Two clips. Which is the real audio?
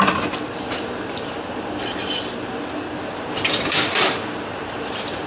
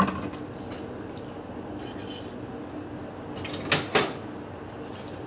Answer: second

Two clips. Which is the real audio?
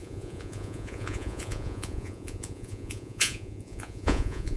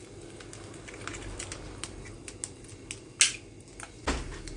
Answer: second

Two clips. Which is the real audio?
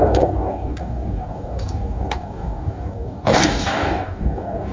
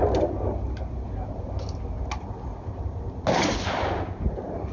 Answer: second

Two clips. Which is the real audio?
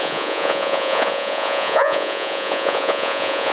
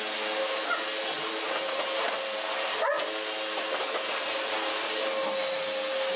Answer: second